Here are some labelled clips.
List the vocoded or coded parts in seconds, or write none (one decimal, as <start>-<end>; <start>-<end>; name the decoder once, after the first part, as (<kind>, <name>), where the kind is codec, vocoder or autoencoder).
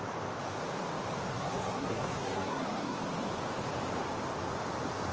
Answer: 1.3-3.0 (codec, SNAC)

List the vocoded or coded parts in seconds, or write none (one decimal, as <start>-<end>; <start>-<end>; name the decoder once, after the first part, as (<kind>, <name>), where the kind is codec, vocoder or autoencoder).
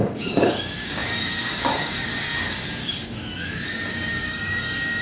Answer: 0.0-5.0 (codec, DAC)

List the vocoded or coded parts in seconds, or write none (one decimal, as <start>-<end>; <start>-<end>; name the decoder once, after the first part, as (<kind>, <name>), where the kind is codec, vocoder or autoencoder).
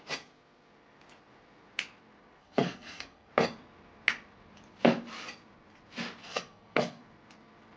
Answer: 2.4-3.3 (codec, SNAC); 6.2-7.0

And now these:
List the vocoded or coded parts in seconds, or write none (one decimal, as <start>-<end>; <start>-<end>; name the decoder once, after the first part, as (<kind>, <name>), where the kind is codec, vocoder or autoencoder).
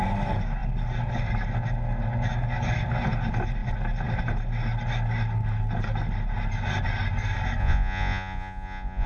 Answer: 7.6-9.1 (vocoder, Vocos)